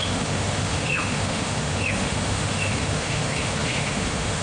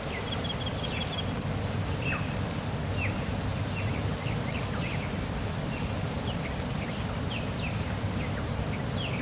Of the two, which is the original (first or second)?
second